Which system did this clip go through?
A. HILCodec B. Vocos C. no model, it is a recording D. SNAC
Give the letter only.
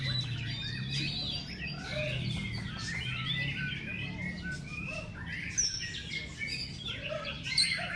C